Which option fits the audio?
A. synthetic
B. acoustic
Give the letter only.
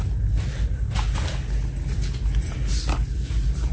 B